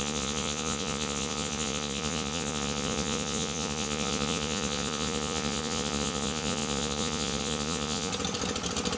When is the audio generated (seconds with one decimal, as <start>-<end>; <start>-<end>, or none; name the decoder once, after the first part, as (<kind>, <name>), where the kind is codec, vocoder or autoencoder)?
0.0-8.1 (vocoder, Vocos)